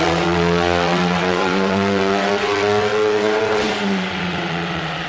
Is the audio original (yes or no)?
no